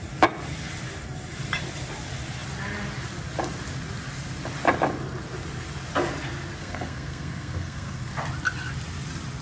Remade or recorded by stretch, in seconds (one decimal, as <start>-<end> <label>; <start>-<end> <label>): 0.0-6.6 recorded; 6.6-8.1 remade; 8.1-9.4 recorded